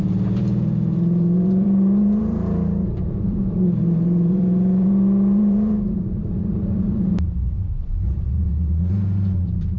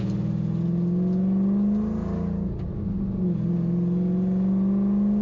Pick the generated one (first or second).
first